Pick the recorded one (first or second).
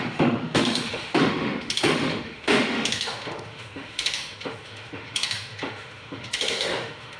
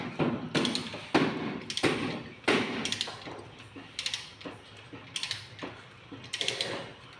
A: second